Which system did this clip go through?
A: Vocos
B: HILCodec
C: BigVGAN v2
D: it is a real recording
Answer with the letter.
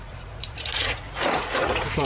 A